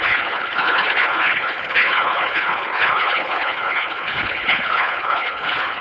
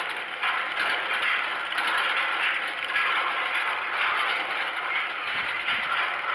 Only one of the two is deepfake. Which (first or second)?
first